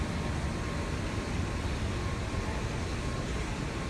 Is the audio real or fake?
real